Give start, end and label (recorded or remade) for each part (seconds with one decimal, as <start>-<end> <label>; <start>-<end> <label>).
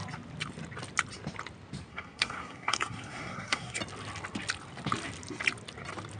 0.0-1.9 recorded; 1.9-3.8 remade; 3.8-6.2 recorded